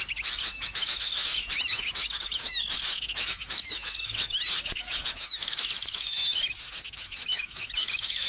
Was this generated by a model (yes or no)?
yes